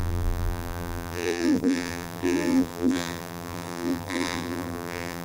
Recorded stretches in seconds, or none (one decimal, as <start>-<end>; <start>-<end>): none